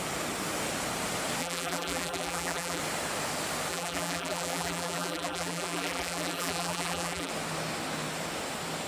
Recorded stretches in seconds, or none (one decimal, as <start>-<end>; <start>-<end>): 0.0-1.4; 2.8-3.7; 7.3-8.9